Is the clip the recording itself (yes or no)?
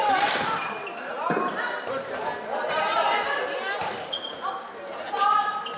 yes